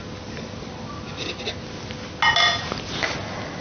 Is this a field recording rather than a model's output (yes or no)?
yes